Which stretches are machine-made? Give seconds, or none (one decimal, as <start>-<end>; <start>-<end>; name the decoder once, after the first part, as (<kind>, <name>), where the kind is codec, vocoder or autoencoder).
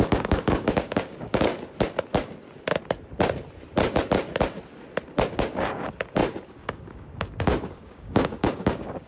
0.0-1.5 (codec, DAC); 5.3-9.1